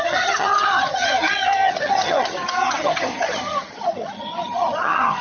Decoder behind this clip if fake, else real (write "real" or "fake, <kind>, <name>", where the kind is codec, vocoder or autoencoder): fake, vocoder, HiFi-GAN